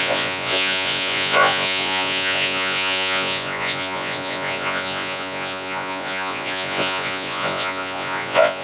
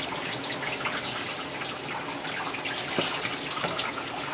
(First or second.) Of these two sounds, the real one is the second